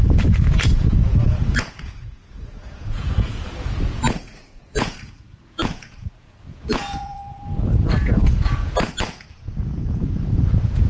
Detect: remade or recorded remade